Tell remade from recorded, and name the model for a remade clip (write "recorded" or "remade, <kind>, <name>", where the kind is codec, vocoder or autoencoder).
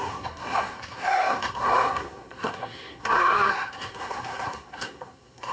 remade, codec, SNAC